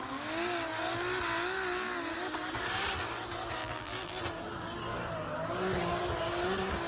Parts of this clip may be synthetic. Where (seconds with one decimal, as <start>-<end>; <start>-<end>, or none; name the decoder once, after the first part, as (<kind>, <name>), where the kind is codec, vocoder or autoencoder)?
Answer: 3.6-4.2 (vocoder, BigVGAN v2)